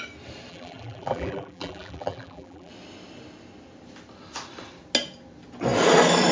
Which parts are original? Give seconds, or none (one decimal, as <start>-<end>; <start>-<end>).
0.0-0.5; 2.7-6.3